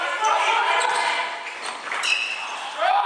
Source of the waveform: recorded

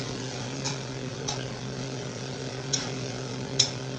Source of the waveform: remade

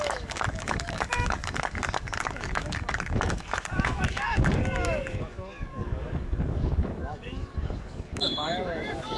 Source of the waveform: remade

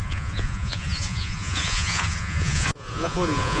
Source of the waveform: remade